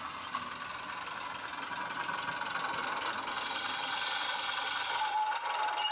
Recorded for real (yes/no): yes